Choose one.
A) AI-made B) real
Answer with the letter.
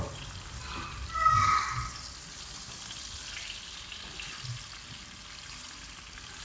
B